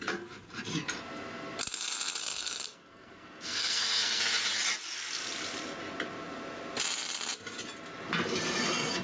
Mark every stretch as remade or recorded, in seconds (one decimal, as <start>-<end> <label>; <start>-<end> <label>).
0.0-2.2 recorded; 2.2-4.2 remade; 4.2-9.0 recorded